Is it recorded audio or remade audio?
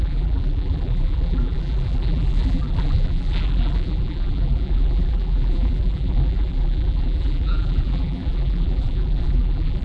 remade